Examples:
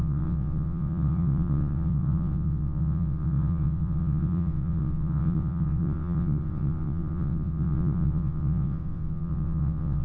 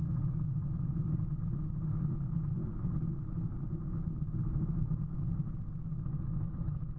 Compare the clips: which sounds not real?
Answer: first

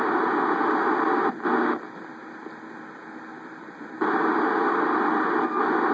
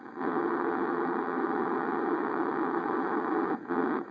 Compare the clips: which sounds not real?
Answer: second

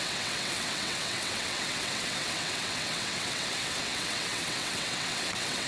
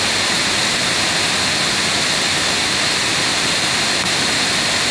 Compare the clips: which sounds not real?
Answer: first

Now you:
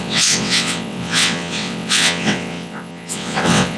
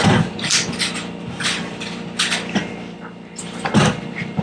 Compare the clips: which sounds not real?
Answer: first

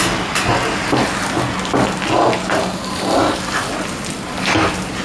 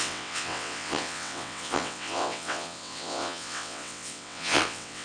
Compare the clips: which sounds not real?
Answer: second